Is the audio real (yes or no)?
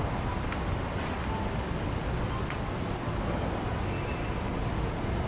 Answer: yes